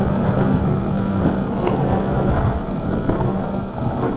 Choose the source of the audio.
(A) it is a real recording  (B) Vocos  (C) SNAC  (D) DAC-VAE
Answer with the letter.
C